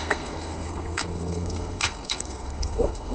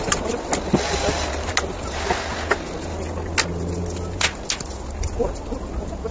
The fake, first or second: first